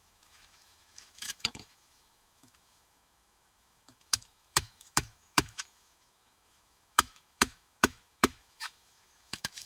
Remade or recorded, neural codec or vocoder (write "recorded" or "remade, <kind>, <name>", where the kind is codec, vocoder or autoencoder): remade, autoencoder, DAC-VAE